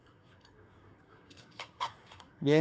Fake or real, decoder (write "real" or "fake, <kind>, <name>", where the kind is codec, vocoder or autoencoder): fake, codec, SNAC